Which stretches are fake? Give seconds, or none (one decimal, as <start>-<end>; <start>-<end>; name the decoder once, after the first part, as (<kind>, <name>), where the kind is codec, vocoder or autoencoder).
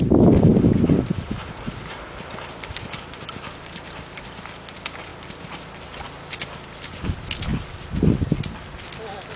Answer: none